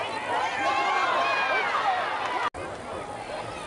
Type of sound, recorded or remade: recorded